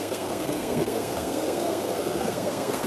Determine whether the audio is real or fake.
fake